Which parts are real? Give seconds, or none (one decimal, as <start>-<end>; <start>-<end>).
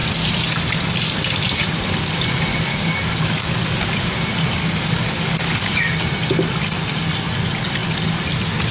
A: 0.0-2.5; 3.6-4.6; 5.7-8.7